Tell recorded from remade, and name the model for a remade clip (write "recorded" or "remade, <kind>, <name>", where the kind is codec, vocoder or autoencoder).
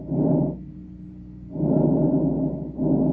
recorded